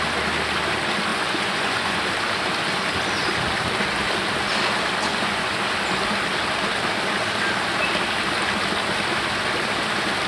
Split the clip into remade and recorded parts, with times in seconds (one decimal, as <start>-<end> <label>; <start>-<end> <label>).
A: 0.0-1.1 recorded; 1.1-2.0 remade; 2.0-5.1 recorded; 5.1-5.6 remade; 5.6-10.3 recorded